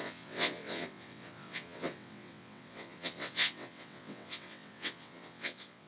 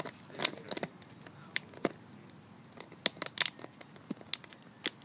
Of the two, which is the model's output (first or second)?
first